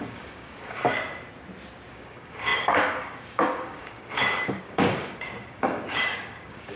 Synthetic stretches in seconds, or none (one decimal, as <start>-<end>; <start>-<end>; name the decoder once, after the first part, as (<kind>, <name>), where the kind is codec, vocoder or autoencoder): 0.0-0.8 (codec, DAC); 1.9-6.8